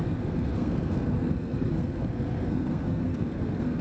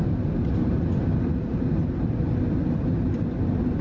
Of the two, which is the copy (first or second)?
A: first